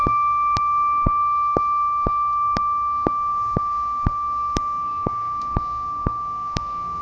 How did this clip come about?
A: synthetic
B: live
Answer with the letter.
A